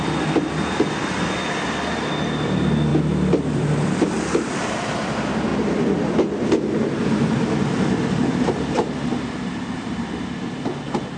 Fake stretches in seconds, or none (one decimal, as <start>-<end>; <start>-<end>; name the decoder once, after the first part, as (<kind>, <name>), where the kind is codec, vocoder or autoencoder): 2.9-4.1 (vocoder, BigVGAN v2); 5.5-6.8